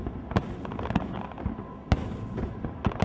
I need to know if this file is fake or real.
real